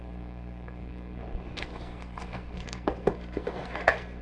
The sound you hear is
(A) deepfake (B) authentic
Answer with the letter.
A